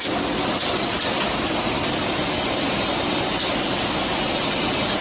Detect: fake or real real